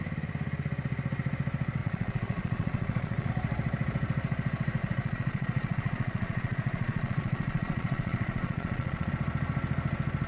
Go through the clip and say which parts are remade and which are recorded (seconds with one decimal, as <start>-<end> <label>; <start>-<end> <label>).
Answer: 0.0-1.8 recorded; 1.8-3.3 remade; 3.3-4.8 recorded; 4.8-9.1 remade; 9.1-10.3 recorded